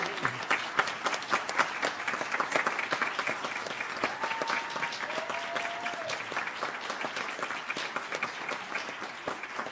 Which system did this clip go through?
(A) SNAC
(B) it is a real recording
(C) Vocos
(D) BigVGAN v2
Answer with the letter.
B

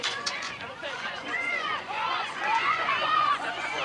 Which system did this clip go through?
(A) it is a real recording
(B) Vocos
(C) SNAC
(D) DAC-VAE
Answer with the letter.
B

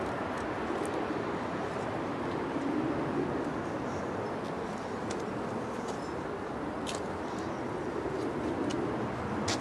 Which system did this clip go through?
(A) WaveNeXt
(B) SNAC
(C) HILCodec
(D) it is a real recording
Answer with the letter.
D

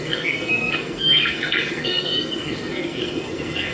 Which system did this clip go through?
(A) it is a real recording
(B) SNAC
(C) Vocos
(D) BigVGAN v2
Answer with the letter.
B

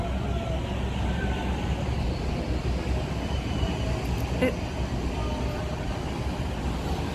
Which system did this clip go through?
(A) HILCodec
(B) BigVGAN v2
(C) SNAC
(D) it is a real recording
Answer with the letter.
D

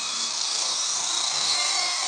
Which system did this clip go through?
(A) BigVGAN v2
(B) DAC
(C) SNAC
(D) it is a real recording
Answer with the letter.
B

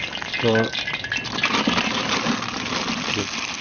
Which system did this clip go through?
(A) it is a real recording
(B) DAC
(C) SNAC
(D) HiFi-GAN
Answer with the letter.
A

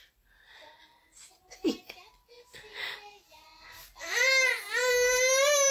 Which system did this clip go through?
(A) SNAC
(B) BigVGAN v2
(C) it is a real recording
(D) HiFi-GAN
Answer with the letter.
C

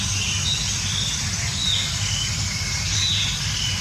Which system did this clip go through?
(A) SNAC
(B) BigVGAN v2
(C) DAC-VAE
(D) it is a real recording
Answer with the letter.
D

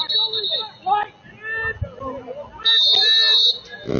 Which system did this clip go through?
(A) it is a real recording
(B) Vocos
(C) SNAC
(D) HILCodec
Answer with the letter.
A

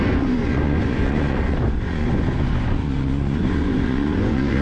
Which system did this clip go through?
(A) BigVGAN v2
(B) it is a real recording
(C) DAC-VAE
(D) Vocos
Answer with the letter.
D